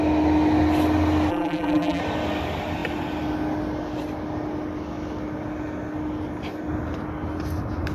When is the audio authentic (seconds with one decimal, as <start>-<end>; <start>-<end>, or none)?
0.0-1.3; 2.0-7.9